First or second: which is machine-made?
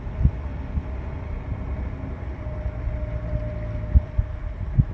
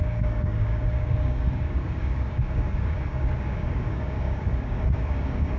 second